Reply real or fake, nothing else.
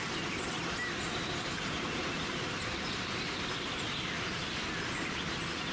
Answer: real